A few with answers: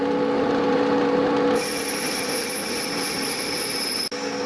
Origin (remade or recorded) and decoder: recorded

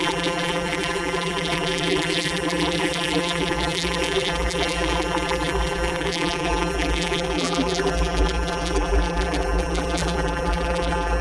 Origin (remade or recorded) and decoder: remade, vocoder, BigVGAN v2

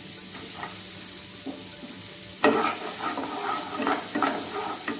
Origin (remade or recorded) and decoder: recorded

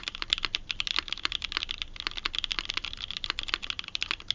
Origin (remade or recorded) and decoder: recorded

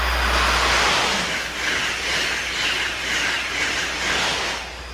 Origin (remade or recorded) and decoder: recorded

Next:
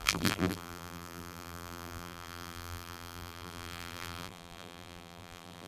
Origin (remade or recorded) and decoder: remade, vocoder, BigVGAN v2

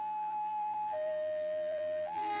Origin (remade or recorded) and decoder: remade, vocoder, BigVGAN v2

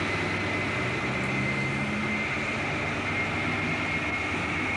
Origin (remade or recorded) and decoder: recorded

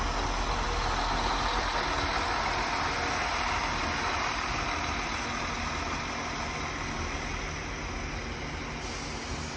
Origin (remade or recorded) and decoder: recorded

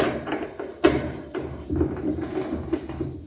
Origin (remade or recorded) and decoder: remade, vocoder, BigVGAN v2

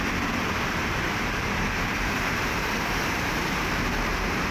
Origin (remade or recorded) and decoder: remade, vocoder, BigVGAN v2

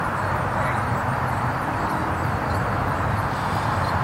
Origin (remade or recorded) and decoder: remade, vocoder, BigVGAN v2